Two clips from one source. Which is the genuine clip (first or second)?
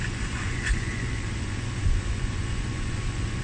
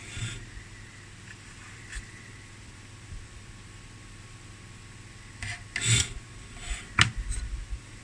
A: second